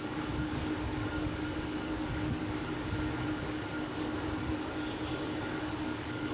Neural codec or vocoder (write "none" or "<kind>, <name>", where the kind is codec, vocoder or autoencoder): codec, DAC